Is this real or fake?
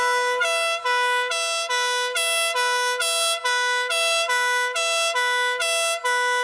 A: real